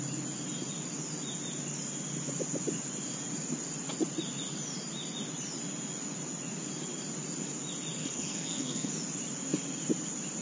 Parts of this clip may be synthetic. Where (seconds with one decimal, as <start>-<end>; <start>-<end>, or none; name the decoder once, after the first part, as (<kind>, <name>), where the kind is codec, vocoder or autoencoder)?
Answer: 8.0-8.9 (codec, SNAC)